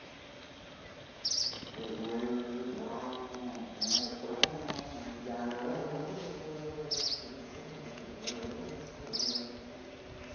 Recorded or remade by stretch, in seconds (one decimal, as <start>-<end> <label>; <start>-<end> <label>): 0.0-1.1 recorded; 1.1-1.7 remade; 1.7-3.7 recorded; 3.7-4.4 remade; 4.4-5.8 recorded; 5.8-8.5 remade; 8.5-10.3 recorded